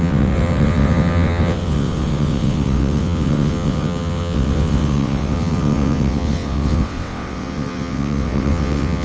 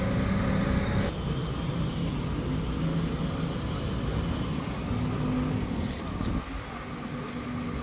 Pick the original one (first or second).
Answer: second